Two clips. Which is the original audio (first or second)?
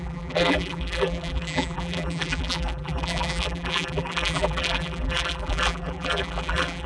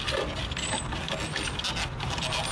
second